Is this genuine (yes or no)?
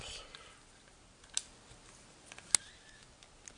yes